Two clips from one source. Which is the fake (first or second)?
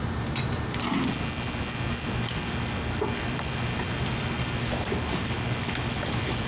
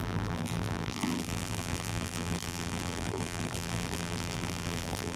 second